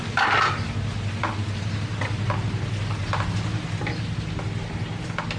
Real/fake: real